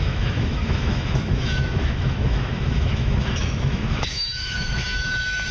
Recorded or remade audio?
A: remade